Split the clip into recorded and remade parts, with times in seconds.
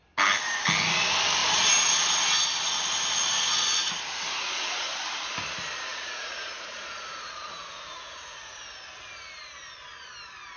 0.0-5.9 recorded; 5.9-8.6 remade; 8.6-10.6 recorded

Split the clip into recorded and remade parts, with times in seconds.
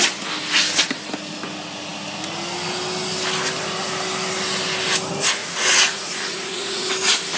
0.0-5.4 recorded; 5.4-6.9 remade; 6.9-7.4 recorded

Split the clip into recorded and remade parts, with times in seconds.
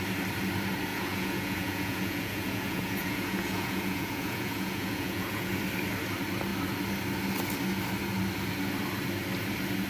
0.0-0.9 recorded; 0.9-5.6 remade; 5.6-9.9 recorded